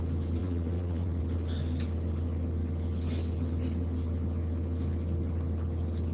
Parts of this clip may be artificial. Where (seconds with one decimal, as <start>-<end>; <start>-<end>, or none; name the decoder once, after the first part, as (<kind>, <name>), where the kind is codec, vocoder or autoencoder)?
0.4-1.2 (vocoder, Vocos)

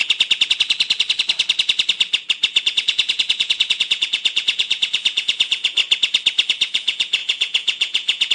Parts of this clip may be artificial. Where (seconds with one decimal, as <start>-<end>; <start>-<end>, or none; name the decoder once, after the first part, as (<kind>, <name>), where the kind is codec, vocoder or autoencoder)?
2.6-5.8 (vocoder, Vocos); 6.5-8.3

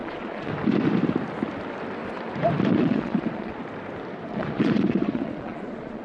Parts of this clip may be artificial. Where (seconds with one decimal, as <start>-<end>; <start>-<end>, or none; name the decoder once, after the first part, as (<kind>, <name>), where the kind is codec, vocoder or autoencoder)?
0.0-0.5 (vocoder, Vocos); 2.7-3.6; 4.3-6.0

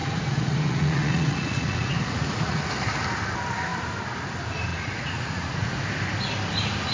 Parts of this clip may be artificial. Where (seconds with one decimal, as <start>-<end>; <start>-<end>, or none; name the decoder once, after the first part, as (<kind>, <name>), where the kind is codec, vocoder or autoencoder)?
0.0-2.6 (vocoder, Vocos); 4.7-5.8